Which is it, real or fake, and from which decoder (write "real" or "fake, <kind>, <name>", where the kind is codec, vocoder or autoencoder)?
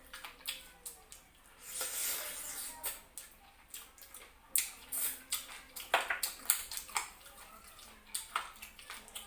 real